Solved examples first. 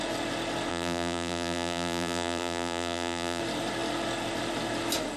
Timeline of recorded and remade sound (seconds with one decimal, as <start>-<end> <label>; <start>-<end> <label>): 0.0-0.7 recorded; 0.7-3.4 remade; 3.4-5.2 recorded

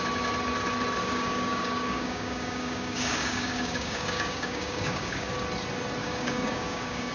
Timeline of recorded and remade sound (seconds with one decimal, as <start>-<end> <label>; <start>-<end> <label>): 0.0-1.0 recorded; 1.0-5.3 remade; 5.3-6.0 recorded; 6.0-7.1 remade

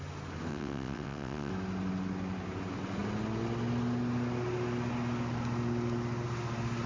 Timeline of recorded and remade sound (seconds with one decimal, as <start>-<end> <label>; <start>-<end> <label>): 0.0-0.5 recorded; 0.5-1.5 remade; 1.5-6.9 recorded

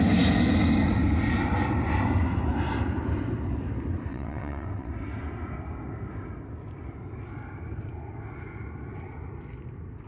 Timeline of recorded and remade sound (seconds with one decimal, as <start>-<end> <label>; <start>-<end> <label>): 0.0-4.1 recorded; 4.1-4.9 remade; 4.9-10.1 recorded

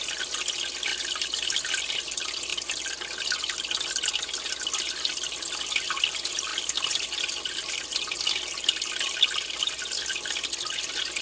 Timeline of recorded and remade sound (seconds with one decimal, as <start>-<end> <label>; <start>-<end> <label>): 0.0-11.2 recorded

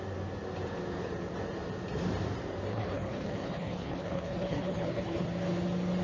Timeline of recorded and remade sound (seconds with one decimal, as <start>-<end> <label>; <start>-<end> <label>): 0.0-2.7 recorded; 2.7-5.3 remade; 5.3-6.0 recorded

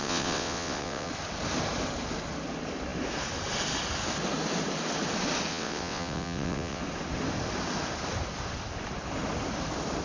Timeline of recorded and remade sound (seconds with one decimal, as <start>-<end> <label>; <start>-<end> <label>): 0.0-1.1 remade; 1.1-5.5 recorded; 5.5-6.8 remade; 6.8-10.0 recorded